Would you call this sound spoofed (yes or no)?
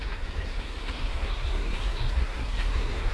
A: yes